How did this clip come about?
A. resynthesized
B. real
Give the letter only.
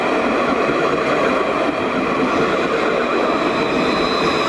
B